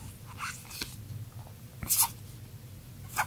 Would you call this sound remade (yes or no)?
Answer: no